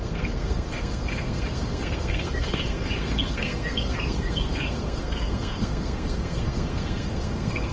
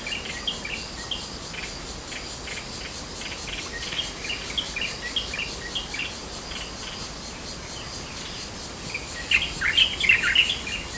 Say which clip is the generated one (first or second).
first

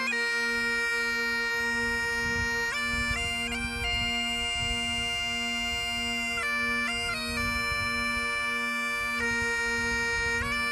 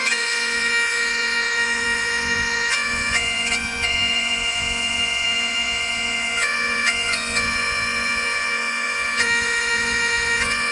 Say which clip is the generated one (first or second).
second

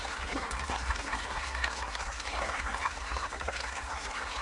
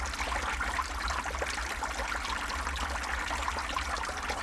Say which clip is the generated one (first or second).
first